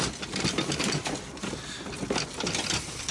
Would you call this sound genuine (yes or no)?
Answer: yes